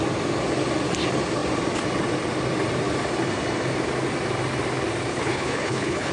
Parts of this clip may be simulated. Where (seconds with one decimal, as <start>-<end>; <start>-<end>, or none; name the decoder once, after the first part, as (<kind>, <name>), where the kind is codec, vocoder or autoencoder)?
5.1-6.1 (codec, HILCodec)